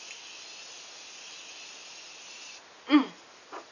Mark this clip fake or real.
real